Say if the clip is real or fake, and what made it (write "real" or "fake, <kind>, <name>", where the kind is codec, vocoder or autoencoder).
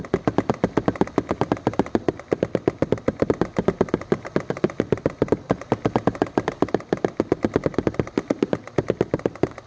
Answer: real